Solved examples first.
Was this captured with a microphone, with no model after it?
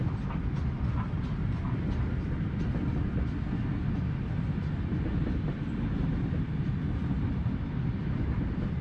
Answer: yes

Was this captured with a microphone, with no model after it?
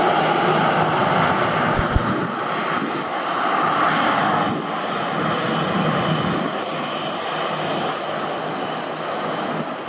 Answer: yes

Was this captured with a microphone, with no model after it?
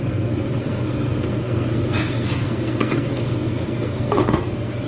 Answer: no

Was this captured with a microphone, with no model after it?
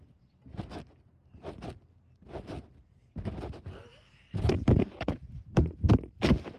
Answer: yes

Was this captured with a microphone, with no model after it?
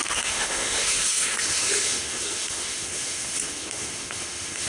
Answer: no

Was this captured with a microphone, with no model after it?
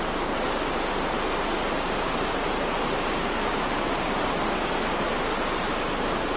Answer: no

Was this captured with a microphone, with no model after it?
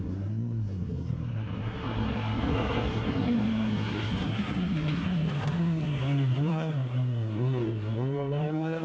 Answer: no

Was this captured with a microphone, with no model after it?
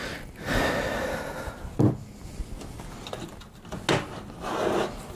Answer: yes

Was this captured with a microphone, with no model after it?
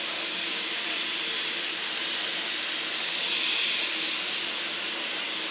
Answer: yes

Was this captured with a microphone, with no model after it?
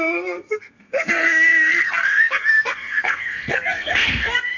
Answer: no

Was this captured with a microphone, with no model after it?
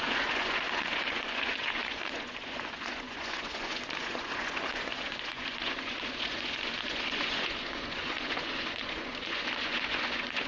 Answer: no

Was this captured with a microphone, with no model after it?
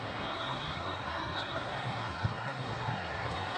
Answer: no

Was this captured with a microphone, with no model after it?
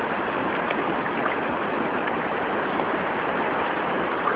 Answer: yes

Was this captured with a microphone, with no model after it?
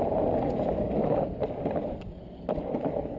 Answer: yes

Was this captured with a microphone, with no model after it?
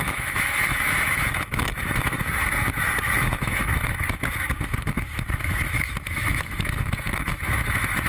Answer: no